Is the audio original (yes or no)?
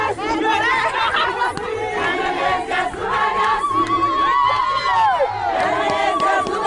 yes